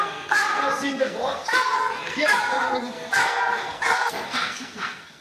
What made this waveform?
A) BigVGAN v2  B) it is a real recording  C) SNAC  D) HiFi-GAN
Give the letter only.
C